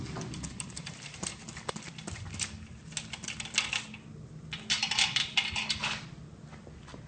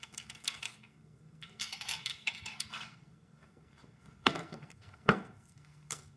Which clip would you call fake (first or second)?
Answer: second